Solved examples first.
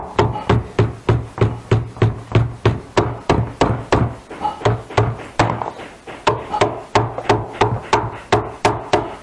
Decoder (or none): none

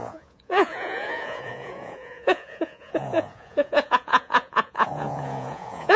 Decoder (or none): vocoder, Vocos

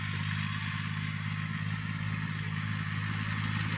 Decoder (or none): none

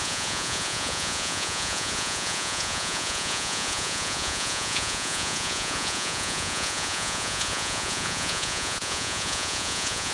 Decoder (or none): vocoder, Vocos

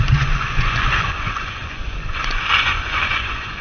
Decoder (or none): vocoder, Vocos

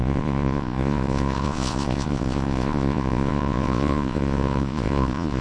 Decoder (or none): vocoder, Vocos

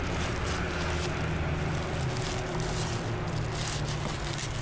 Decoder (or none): none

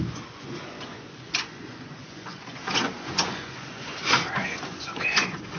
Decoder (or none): vocoder, Vocos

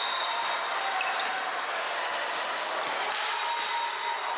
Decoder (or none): none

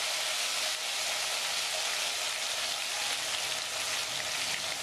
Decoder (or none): none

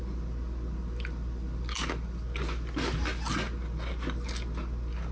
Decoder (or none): none